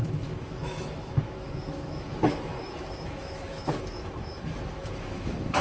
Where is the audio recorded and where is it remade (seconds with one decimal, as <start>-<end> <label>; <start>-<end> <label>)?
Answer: 0.0-5.6 remade